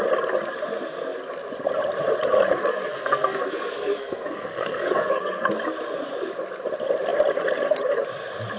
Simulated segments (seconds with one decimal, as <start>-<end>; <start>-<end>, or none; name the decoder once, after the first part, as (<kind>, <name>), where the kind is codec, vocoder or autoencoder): 2.7-5.5 (codec, SNAC)